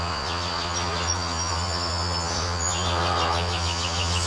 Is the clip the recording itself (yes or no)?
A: no